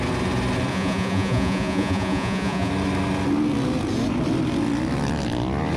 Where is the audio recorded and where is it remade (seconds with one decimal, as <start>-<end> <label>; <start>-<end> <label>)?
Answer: 0.0-0.7 recorded; 0.7-2.7 remade; 2.7-5.8 recorded